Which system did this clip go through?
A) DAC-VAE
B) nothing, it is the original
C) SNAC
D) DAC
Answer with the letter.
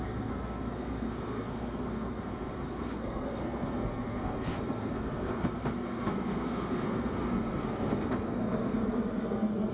C